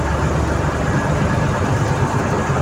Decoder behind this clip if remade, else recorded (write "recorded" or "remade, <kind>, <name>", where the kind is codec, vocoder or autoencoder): recorded